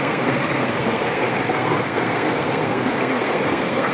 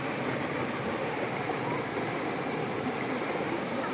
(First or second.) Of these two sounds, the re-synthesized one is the first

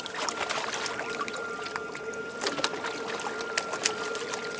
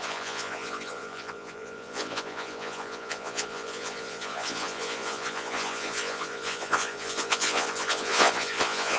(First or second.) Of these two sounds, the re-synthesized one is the second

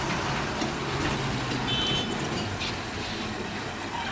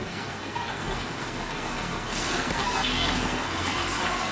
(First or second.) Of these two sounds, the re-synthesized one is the second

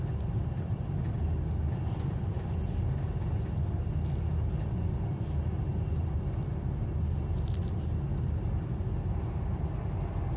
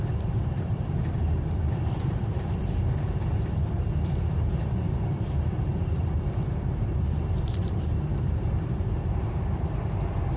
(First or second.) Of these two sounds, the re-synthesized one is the second